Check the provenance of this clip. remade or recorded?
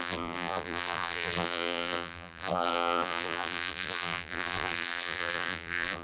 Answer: remade